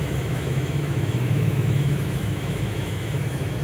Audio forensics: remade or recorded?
remade